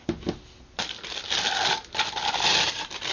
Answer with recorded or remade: recorded